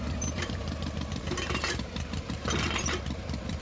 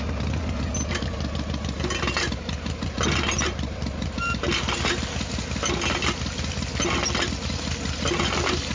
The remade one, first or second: first